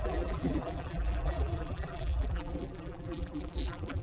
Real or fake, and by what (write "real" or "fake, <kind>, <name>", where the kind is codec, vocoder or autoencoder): fake, vocoder, BigVGAN v2